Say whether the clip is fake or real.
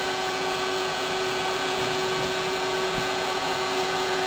fake